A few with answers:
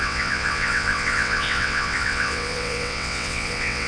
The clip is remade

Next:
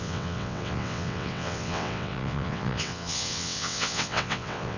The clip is remade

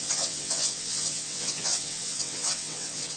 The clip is remade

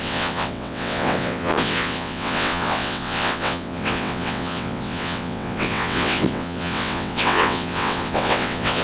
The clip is remade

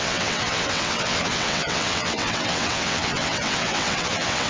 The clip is remade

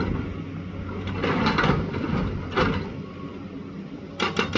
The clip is recorded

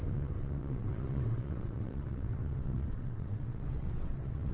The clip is remade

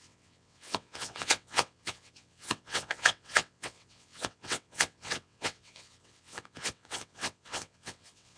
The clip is remade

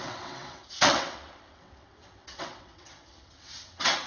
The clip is remade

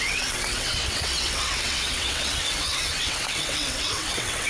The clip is remade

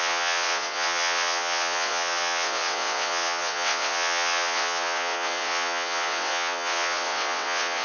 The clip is remade